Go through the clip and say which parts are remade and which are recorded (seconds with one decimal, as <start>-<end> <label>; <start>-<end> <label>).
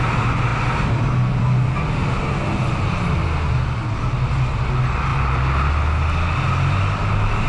0.0-5.1 recorded; 5.1-5.7 remade; 5.7-7.5 recorded